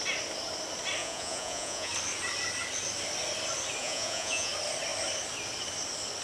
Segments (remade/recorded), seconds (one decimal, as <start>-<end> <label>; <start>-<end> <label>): 0.0-1.0 recorded; 1.0-1.9 remade; 1.9-3.8 recorded; 3.8-4.5 remade; 4.5-6.2 recorded

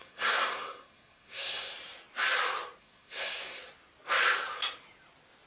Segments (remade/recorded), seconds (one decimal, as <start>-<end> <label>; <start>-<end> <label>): 0.0-1.7 remade; 1.7-2.8 recorded; 2.8-3.6 remade; 3.6-5.5 recorded

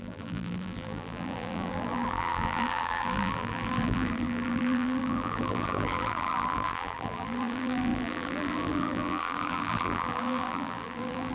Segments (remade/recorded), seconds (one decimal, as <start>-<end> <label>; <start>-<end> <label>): 0.0-11.3 remade

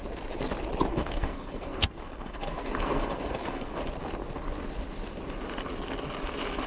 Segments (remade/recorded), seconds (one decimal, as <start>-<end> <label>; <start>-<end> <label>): 0.0-0.9 recorded; 0.9-3.8 remade; 3.8-6.7 recorded

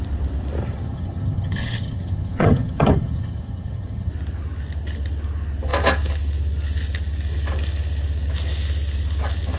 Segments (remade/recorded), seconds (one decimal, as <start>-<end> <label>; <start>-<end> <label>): 0.0-0.6 recorded; 0.6-4.1 remade; 4.1-9.6 recorded

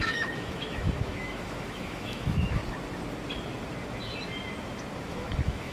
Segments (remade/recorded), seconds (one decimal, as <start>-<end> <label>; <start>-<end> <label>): 0.0-2.6 remade; 2.6-5.0 recorded; 5.0-5.7 remade